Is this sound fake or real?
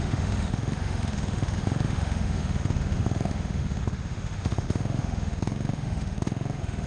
fake